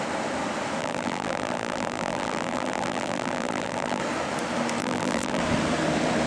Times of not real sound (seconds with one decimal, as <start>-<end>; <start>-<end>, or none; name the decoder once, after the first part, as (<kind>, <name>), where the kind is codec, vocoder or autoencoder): 0.8-4.0 (vocoder, BigVGAN v2); 4.8-5.4